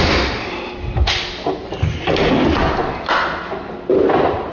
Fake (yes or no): no